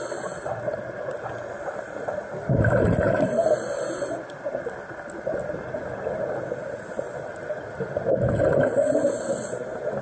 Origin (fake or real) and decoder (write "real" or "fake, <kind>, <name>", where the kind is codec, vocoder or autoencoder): real